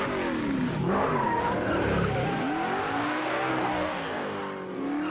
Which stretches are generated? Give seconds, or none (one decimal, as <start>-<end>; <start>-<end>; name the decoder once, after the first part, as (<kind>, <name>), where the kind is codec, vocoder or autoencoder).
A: 2.8-4.4 (codec, DAC)